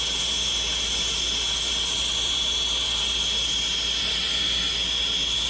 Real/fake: real